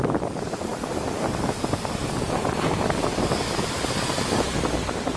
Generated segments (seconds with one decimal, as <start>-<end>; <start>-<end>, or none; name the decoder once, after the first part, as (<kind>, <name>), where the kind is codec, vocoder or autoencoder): none